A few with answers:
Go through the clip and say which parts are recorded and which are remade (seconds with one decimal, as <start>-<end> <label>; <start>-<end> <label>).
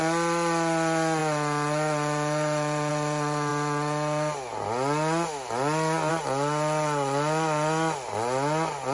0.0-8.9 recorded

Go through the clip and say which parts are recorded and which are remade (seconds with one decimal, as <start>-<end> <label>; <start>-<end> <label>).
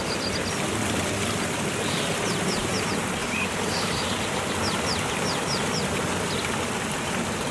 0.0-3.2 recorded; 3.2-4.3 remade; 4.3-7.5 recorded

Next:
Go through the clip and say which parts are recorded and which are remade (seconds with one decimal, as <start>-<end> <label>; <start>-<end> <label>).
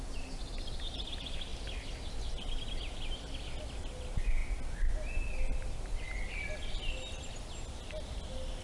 0.0-8.6 recorded